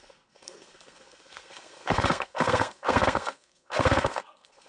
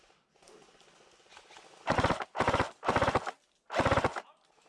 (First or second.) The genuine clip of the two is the second